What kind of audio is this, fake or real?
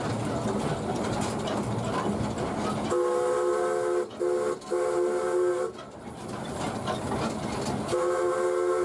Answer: real